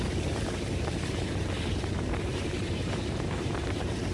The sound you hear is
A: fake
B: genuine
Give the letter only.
A